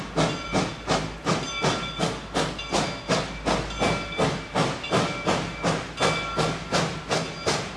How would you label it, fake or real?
real